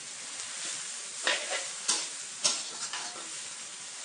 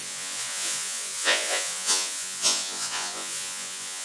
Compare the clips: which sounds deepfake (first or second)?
second